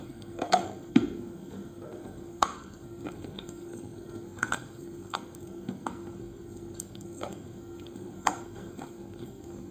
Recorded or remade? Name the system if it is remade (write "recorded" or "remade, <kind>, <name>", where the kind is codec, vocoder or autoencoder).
remade, codec, SNAC